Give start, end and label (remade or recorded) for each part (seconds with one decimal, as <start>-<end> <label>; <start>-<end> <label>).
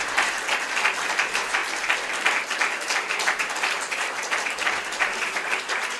0.0-1.6 remade; 1.6-3.1 recorded; 3.1-6.0 remade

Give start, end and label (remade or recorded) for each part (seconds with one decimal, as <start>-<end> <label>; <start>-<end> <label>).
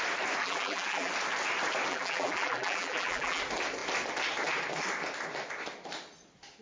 0.0-0.4 recorded; 0.4-1.1 remade; 1.1-1.9 recorded; 1.9-3.4 remade; 3.4-6.6 recorded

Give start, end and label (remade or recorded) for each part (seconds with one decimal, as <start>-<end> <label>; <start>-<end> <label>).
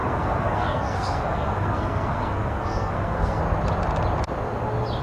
0.0-3.4 remade; 3.4-5.0 recorded